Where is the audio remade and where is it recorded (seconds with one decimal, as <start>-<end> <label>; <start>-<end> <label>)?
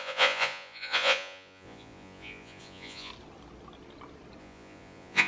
0.0-3.1 remade; 3.1-4.4 recorded; 4.4-5.3 remade